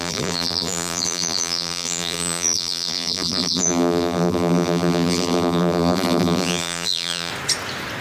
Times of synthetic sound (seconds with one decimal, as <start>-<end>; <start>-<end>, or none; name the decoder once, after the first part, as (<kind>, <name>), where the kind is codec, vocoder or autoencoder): 0.0-7.3 (vocoder, BigVGAN v2)